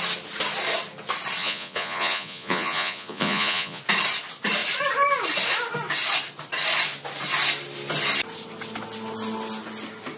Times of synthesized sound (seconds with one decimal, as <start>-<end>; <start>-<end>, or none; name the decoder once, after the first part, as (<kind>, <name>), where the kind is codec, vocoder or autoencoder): 1.4-3.8 (vocoder, Vocos)